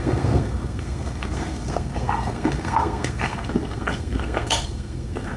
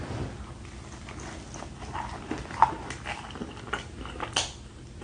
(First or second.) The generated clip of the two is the first